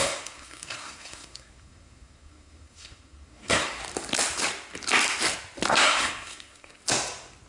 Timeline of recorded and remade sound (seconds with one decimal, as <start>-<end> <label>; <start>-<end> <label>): 0.0-3.8 remade; 3.8-5.7 recorded; 5.7-6.8 remade; 6.8-7.5 recorded